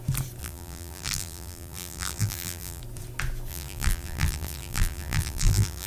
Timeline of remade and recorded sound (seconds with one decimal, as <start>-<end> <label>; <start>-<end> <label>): 0.0-0.4 recorded; 0.4-2.8 remade; 2.8-3.5 recorded; 3.5-5.9 remade